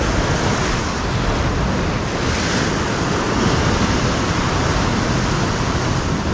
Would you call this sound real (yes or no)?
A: yes